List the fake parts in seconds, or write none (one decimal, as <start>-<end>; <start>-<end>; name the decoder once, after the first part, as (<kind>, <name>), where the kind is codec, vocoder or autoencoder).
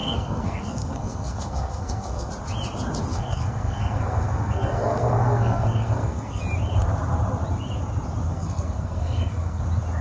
0.0-2.3 (codec, SNAC); 3.1-6.4; 8.3-9.6